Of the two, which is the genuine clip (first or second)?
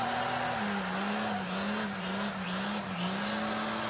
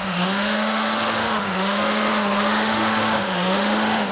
first